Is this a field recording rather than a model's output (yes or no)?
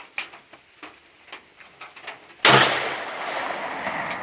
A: yes